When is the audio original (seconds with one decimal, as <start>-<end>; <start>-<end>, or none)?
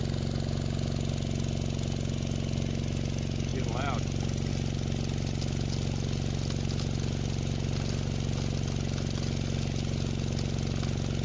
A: 0.0-11.2